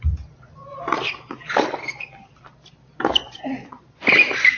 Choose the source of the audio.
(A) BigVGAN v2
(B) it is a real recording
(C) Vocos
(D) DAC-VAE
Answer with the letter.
B